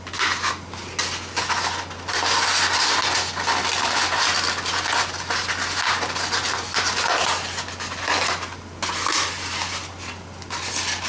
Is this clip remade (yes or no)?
no